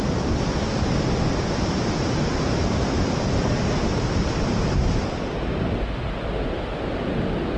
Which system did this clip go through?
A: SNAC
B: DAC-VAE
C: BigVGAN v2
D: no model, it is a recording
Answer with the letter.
D